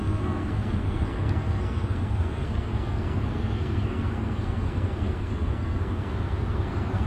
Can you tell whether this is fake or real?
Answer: fake